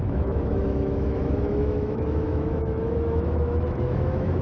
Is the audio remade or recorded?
remade